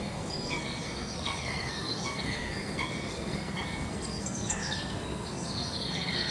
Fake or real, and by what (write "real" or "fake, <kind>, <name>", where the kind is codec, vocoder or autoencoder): fake, codec, SNAC